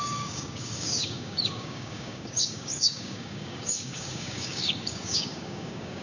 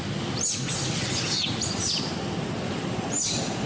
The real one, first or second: second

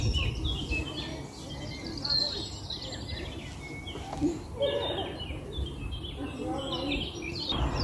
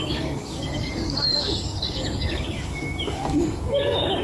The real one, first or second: first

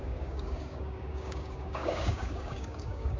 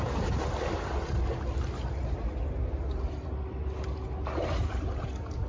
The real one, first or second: second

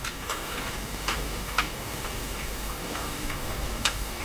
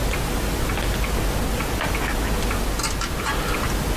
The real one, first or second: second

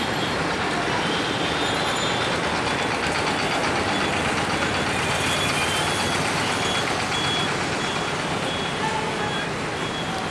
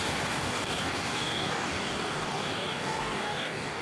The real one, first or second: first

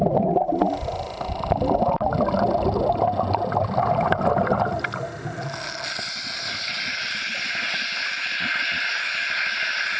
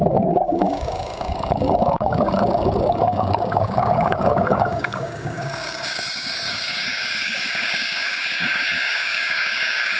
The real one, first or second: first